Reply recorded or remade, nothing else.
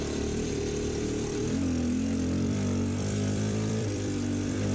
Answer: remade